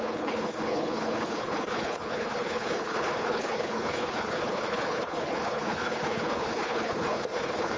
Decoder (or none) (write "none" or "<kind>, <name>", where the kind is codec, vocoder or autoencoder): codec, HILCodec